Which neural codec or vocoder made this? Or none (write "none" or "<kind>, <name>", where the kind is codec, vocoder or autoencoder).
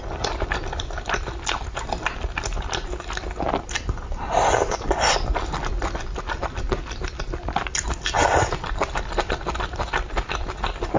none